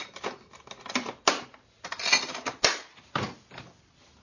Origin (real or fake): real